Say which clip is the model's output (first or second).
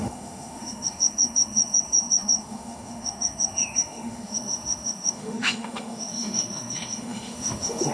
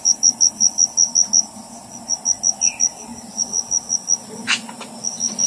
first